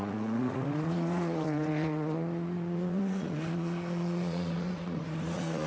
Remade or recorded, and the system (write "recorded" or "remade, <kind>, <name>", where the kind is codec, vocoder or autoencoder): remade, vocoder, Vocos